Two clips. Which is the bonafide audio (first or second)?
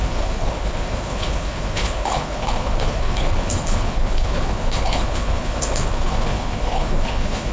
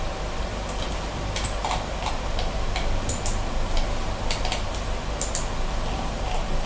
second